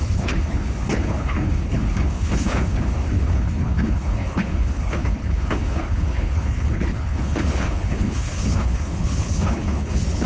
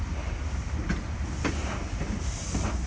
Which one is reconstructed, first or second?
first